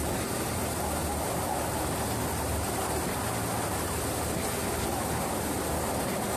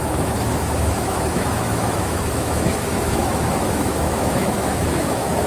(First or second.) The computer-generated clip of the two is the second